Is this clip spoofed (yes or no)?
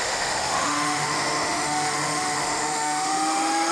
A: yes